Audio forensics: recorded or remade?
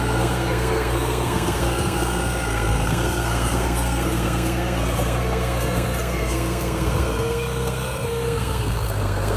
remade